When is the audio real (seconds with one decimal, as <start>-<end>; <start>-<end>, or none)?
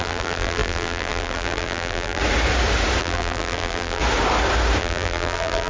2.2-3.0; 4.0-4.8